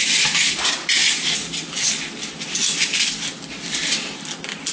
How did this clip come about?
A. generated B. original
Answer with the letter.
B